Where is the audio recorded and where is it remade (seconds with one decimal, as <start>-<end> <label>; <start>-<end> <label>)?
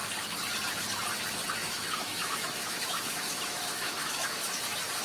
0.0-1.6 recorded; 1.6-4.6 remade; 4.6-5.0 recorded